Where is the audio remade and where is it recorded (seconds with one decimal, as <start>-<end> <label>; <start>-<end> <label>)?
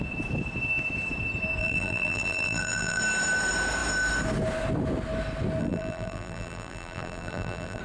0.0-1.6 recorded; 1.6-3.0 remade; 3.0-5.6 recorded; 5.6-7.8 remade